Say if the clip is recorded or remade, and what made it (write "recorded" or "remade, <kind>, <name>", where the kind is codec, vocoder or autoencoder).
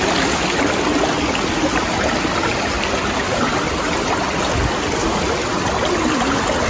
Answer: recorded